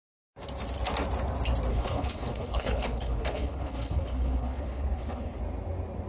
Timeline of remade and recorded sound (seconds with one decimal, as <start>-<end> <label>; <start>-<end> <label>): 0.0-1.7 recorded; 1.7-5.4 remade; 5.4-6.1 recorded